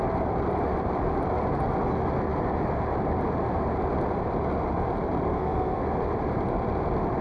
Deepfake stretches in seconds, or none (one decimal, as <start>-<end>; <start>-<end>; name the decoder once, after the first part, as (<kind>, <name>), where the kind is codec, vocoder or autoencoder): 5.3-5.8 (codec, SNAC)